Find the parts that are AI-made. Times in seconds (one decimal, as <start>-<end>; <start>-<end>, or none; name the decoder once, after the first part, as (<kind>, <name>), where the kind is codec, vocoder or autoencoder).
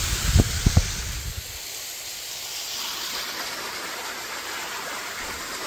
0.0-5.7 (vocoder, BigVGAN v2)